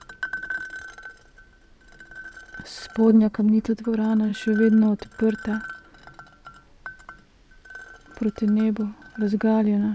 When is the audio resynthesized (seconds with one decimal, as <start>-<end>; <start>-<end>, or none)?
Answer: 3.1-3.7